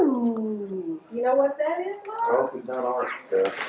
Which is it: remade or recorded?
recorded